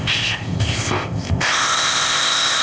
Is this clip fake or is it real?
fake